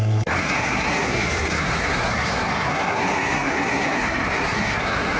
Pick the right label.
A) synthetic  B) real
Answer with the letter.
A